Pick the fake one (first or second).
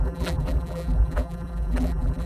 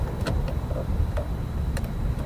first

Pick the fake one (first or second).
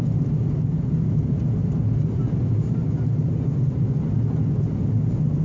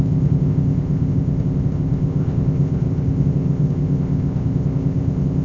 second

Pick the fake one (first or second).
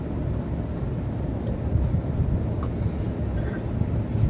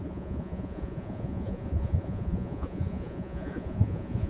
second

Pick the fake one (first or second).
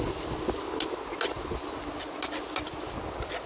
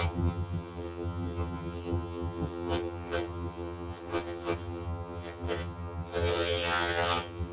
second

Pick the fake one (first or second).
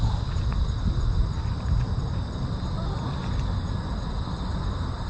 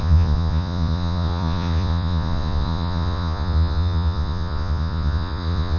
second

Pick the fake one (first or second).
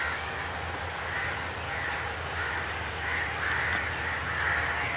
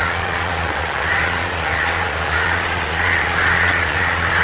second